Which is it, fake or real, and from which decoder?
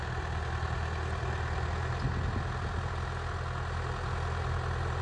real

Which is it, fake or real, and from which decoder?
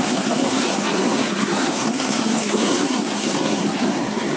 fake, codec, SNAC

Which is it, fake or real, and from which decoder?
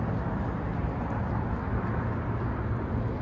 real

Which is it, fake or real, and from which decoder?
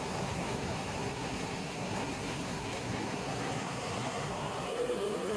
fake, codec, SNAC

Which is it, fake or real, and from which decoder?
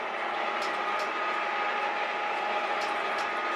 real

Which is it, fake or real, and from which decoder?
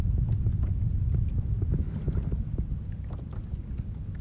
real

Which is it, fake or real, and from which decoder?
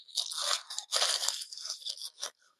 fake, codec, SNAC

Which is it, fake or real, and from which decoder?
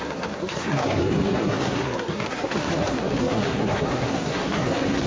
fake, codec, SNAC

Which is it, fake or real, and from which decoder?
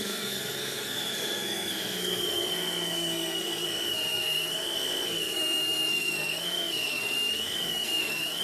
fake, codec, SNAC